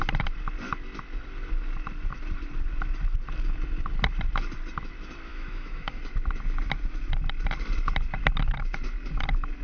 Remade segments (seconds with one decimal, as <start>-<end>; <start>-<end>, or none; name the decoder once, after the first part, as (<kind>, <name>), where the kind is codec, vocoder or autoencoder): 5.3-6.0 (autoencoder, DAC-VAE)